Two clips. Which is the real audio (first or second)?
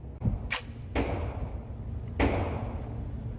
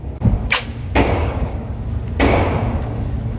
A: first